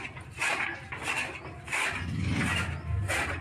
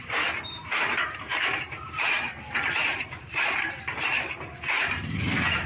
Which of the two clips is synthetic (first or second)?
second